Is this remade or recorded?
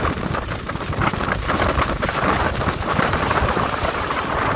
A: recorded